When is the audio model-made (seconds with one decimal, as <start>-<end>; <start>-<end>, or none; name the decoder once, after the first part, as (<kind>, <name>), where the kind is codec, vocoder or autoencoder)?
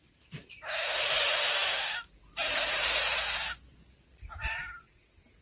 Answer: none